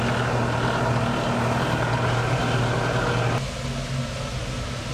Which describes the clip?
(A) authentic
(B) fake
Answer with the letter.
A